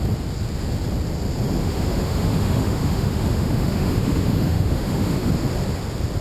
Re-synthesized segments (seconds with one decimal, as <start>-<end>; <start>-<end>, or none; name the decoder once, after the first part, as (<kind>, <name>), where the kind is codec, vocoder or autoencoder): 1.6-5.3 (autoencoder, DAC-VAE)